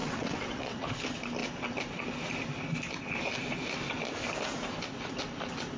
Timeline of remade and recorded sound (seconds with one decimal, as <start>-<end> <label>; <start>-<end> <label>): 0.0-0.8 remade; 0.8-5.8 recorded

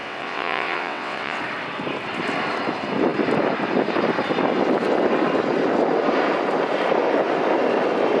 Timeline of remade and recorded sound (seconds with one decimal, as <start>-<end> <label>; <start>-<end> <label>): 0.0-1.4 remade; 1.4-8.2 recorded

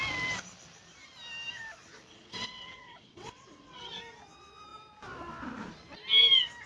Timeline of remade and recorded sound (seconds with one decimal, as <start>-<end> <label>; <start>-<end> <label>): 0.0-2.1 recorded; 2.1-4.0 remade; 4.0-6.7 recorded

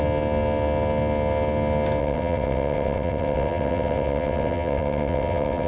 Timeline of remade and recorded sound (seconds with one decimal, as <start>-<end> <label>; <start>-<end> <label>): 0.0-2.0 recorded; 2.0-5.7 remade

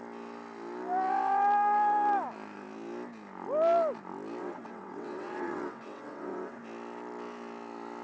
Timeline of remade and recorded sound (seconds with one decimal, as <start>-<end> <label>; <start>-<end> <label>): 0.0-4.4 recorded; 4.4-6.6 remade; 6.6-8.0 recorded

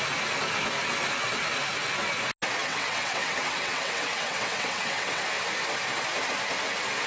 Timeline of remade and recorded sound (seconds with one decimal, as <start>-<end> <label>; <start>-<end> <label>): 0.0-2.6 recorded; 2.6-5.2 remade; 5.2-7.1 recorded